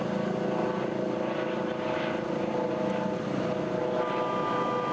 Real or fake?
real